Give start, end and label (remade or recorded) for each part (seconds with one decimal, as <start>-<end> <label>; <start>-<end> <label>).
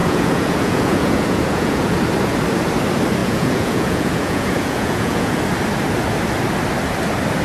0.0-2.0 remade; 2.0-3.2 recorded; 3.2-5.4 remade; 5.4-7.4 recorded